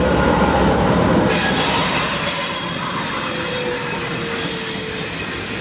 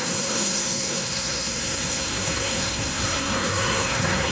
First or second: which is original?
first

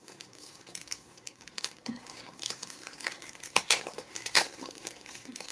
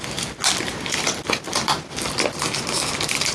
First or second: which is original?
second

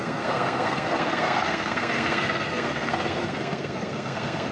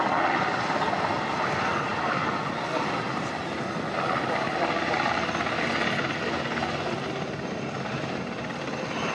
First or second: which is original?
second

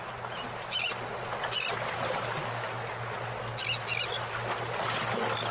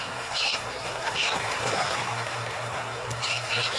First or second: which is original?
first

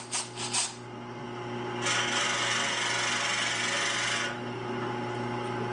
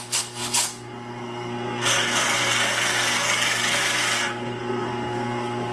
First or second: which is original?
first